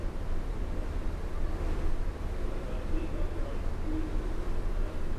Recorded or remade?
recorded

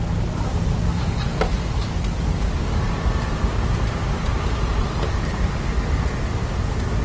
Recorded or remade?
recorded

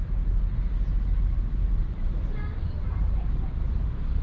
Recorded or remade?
recorded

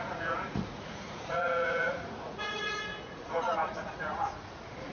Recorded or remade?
remade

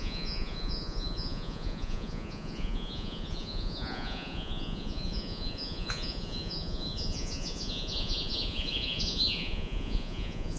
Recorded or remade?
remade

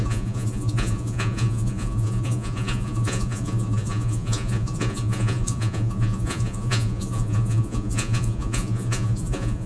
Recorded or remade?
remade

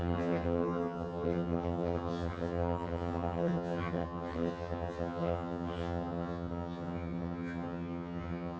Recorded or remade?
remade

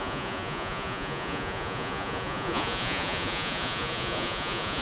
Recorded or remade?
remade